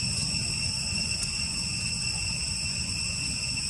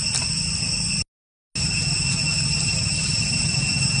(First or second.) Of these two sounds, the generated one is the first